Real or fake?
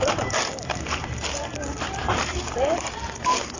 fake